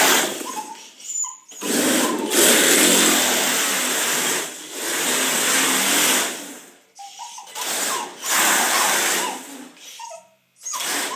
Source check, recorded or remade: recorded